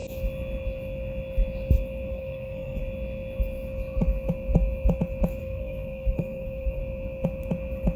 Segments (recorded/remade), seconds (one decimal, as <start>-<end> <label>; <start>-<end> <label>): 0.0-2.1 recorded; 2.1-2.8 remade; 2.8-5.4 recorded; 5.4-6.8 remade; 6.8-8.0 recorded